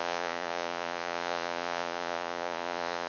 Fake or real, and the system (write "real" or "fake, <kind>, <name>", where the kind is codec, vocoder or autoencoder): fake, vocoder, Vocos